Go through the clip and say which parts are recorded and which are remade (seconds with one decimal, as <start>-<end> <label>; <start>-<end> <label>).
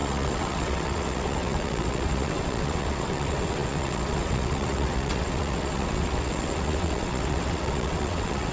0.0-8.5 remade